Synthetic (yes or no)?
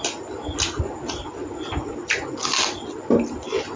no